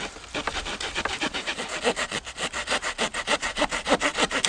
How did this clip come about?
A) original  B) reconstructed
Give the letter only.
A